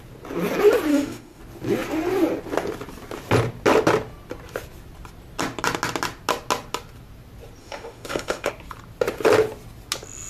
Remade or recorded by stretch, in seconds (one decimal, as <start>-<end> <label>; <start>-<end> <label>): 0.0-0.9 recorded; 0.9-1.4 remade; 1.4-7.6 recorded; 7.6-8.5 remade; 8.5-10.3 recorded